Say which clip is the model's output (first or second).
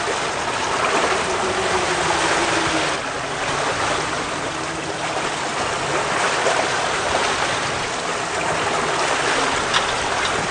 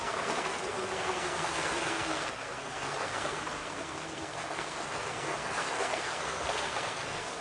second